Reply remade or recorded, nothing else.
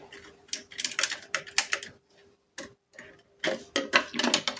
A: recorded